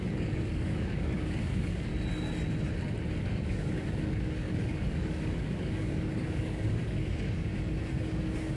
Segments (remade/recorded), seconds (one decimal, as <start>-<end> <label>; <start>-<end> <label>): 0.0-1.9 remade; 1.9-3.2 recorded; 3.2-8.6 remade